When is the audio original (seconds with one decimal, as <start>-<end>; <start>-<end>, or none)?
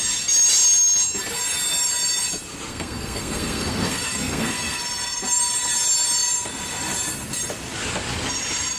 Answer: 0.0-2.7; 4.8-8.8